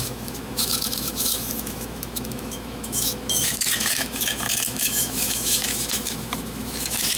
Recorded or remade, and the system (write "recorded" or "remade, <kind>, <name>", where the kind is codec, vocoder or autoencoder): remade, autoencoder, DAC-VAE